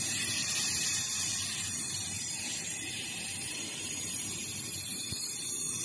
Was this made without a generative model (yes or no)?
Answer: no